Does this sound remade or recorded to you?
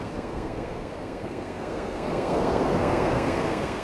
remade